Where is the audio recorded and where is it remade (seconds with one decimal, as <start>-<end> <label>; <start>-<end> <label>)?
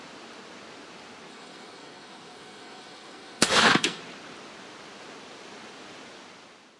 0.0-1.3 recorded; 1.3-4.0 remade; 4.0-6.8 recorded